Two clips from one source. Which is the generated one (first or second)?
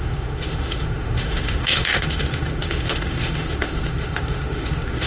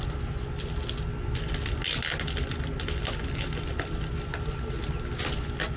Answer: first